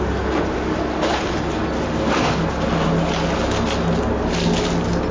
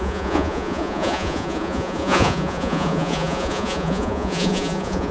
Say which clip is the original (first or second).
first